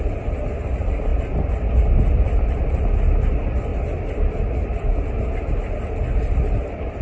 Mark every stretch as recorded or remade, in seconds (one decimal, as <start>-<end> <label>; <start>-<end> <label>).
0.0-7.0 recorded